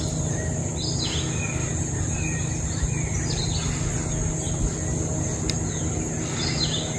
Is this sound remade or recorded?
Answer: recorded